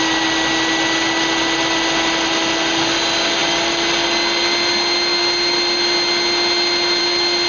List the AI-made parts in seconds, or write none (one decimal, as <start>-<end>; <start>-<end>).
none